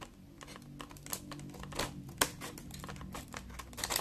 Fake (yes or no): no